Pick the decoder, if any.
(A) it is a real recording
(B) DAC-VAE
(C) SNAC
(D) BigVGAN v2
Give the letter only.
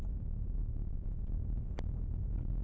D